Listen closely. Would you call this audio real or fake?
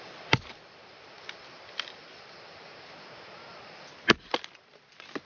real